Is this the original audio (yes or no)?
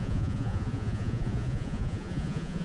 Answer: no